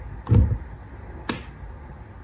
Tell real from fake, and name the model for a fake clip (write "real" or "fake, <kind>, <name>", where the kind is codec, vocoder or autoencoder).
real